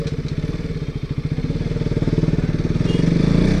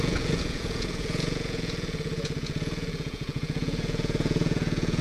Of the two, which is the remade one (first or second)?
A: second